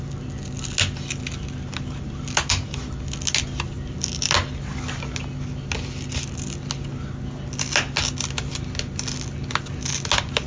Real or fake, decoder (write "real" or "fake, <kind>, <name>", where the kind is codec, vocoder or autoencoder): real